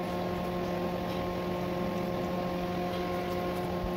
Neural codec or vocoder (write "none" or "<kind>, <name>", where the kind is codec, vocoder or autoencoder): none